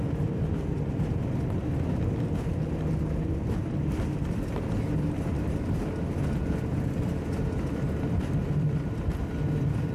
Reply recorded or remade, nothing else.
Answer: recorded